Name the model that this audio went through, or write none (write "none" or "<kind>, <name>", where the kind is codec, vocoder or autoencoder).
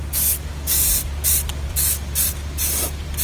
none